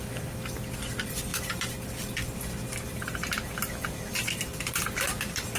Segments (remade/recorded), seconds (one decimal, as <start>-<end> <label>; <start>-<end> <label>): 0.0-5.6 recorded

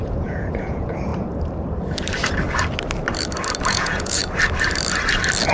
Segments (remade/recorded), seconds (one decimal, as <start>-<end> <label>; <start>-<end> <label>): 0.0-1.1 remade; 1.1-3.7 recorded; 3.7-4.2 remade; 4.2-5.5 recorded

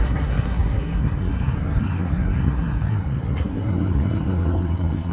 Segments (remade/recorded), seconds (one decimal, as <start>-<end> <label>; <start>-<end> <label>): 0.0-5.1 remade

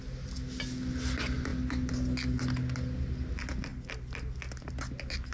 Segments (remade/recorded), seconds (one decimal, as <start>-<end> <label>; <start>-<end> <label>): 0.0-5.3 recorded

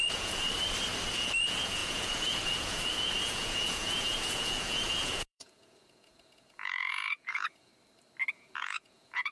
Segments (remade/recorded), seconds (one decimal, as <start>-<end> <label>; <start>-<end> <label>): 0.0-0.5 remade; 0.5-1.1 recorded; 1.1-7.7 remade; 7.7-8.3 recorded; 8.3-9.3 remade

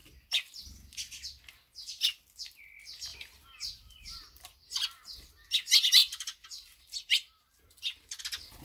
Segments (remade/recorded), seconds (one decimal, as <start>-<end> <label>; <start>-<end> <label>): 0.0-3.1 recorded; 3.1-5.3 remade; 5.3-6.0 recorded; 6.0-8.2 remade; 8.2-8.6 recorded

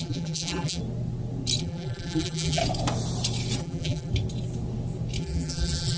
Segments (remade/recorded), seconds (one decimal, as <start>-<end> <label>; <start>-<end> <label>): 0.0-0.8 remade; 0.8-1.6 recorded; 1.6-2.6 remade; 2.6-3.6 recorded; 3.6-4.1 remade; 4.1-5.2 recorded; 5.2-6.0 remade